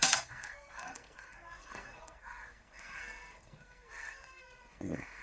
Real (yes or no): no